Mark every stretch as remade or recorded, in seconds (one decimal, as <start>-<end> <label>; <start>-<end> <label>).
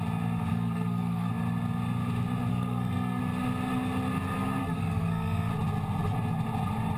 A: 0.0-0.5 recorded; 0.5-1.3 remade; 1.3-2.5 recorded; 2.5-3.2 remade; 3.2-4.6 recorded; 4.6-5.5 remade; 5.5-7.0 recorded